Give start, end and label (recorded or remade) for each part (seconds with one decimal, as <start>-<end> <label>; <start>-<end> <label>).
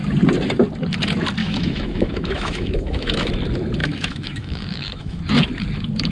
0.0-1.4 recorded; 1.4-3.3 remade; 3.3-3.8 recorded; 3.8-5.2 remade; 5.2-6.1 recorded